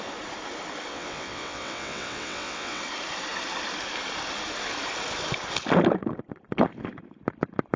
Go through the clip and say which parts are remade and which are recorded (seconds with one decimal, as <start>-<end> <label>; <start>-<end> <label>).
0.0-0.9 recorded; 0.9-2.8 remade; 2.8-7.8 recorded